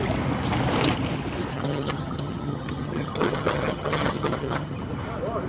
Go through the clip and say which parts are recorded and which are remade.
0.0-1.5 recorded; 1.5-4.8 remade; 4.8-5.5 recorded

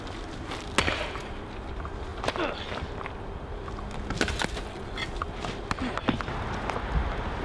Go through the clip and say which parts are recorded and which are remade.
0.0-7.4 recorded

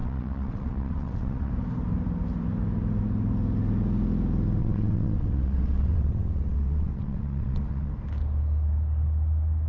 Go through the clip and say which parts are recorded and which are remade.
0.0-1.5 remade; 1.5-4.6 recorded; 4.6-7.9 remade; 7.9-9.7 recorded

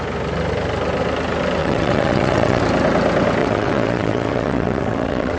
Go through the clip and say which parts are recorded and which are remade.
0.0-1.6 recorded; 1.6-2.6 remade; 2.6-3.4 recorded; 3.4-5.4 remade

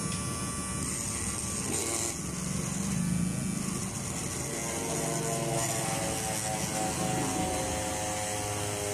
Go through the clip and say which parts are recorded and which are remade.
0.0-8.9 recorded

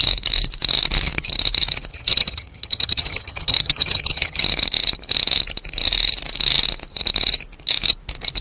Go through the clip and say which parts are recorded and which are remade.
0.0-1.9 recorded; 1.9-4.4 remade; 4.4-8.4 recorded

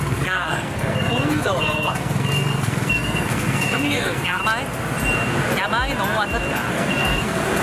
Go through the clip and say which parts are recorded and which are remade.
0.0-4.4 remade; 4.4-6.7 recorded; 6.7-7.6 remade

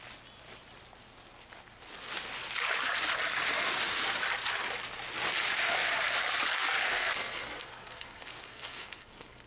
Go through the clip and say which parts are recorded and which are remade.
0.0-6.5 recorded; 6.5-9.5 remade